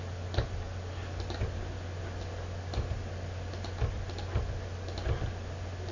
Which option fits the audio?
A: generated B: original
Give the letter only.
B